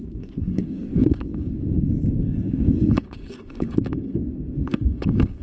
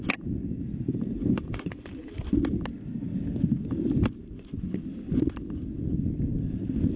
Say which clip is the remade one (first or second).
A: first